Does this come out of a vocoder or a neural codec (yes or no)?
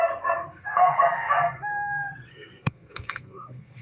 yes